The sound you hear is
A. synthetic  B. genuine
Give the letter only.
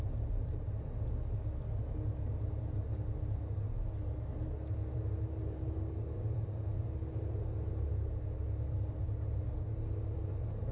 B